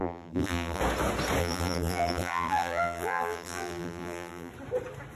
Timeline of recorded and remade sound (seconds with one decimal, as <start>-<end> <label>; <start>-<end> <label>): 0.0-0.8 remade; 0.8-1.4 recorded; 1.4-4.5 remade; 4.5-5.2 recorded